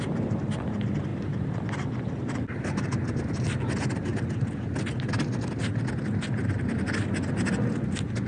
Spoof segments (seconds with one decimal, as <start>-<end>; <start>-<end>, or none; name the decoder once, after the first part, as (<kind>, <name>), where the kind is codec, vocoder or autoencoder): none